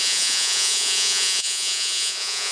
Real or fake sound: fake